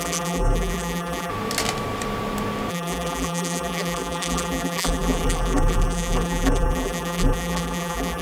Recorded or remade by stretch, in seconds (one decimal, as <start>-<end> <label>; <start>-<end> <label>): 0.0-1.3 remade; 1.3-2.7 recorded; 2.7-8.2 remade

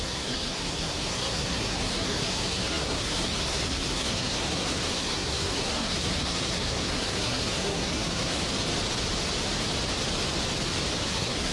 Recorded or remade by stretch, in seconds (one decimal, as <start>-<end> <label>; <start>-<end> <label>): 0.0-8.4 remade; 8.4-11.0 recorded; 11.0-11.5 remade

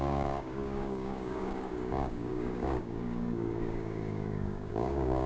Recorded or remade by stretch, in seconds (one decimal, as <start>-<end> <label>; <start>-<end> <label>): 0.0-5.3 remade

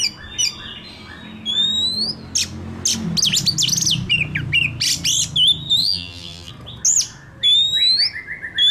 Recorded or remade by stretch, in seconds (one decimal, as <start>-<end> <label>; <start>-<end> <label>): 0.0-5.8 recorded; 5.8-6.5 remade; 6.5-8.7 recorded

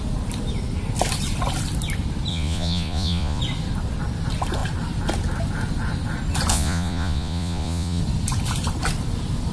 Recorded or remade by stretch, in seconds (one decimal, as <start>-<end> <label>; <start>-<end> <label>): 0.0-2.3 recorded; 2.3-3.4 remade; 3.4-6.5 recorded; 6.5-8.0 remade; 8.0-9.5 recorded

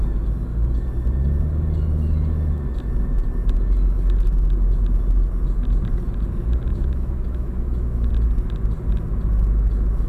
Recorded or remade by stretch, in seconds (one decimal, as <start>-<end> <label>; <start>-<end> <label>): 0.0-6.7 recorded; 6.7-8.1 remade; 8.1-10.1 recorded

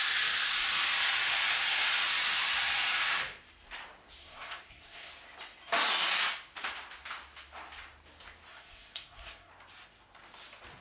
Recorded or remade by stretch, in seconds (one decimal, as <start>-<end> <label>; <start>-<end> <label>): 0.0-4.2 recorded; 4.2-5.1 remade; 5.1-8.5 recorded; 8.5-9.5 remade; 9.5-10.8 recorded